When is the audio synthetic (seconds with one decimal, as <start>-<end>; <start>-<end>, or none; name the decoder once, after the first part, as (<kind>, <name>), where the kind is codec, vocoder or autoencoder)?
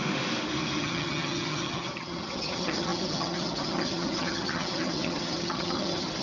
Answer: 0.8-6.2 (vocoder, HiFi-GAN)